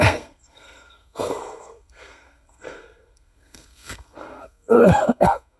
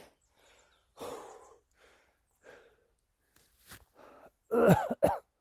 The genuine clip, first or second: second